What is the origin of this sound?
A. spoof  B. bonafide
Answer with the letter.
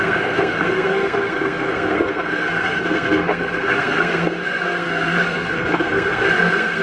A